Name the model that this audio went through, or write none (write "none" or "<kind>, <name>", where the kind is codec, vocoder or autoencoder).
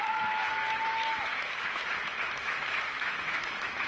autoencoder, DAC-VAE